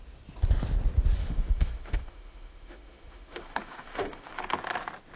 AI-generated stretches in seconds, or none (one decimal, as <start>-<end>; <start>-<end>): 1.2-4.3